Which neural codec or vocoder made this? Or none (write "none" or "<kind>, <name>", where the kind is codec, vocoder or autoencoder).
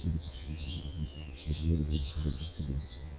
vocoder, Vocos